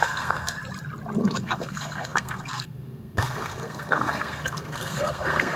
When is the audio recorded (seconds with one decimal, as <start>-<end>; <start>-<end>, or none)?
0.6-1.2